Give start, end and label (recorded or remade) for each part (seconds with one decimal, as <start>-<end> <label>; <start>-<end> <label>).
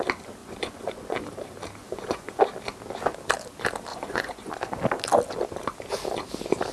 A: 0.0-0.4 recorded; 0.4-1.2 remade; 1.2-1.8 recorded; 1.8-2.4 remade; 2.4-3.9 recorded; 3.9-4.8 remade; 4.8-6.7 recorded